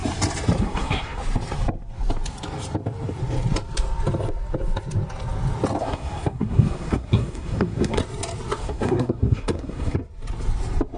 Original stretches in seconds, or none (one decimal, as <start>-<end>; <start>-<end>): 0.0-0.6; 1.2-5.8; 8.0-8.6; 10.0-11.0